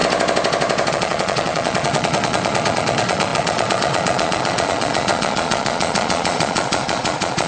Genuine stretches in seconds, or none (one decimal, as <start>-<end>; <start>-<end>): 0.0-0.9